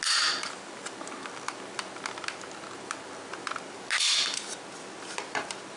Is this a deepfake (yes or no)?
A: no